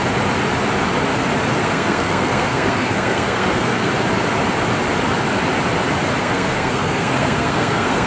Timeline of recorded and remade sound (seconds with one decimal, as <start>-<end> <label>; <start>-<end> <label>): 0.0-1.6 recorded; 1.6-3.9 remade; 3.9-6.2 recorded; 6.2-8.1 remade